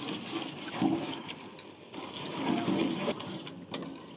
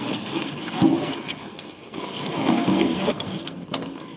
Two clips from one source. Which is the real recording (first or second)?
first